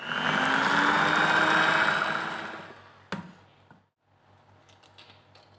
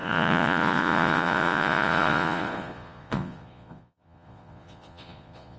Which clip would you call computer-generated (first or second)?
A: second